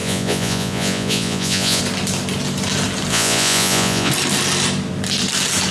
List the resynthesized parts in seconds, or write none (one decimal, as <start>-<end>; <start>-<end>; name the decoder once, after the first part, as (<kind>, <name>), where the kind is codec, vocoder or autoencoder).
0.0-1.8 (vocoder, Vocos); 3.1-4.1